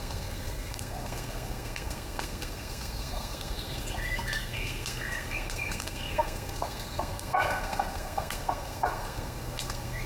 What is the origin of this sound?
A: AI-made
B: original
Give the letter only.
A